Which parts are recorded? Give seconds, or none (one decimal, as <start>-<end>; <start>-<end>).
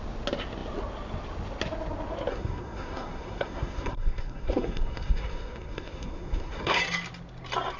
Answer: 0.0-2.3; 6.8-7.8